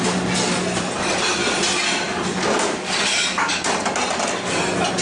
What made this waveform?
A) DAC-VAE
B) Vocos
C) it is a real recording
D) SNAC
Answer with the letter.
C